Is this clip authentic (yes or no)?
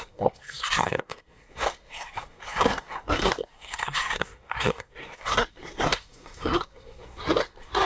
no